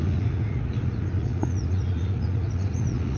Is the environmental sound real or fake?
fake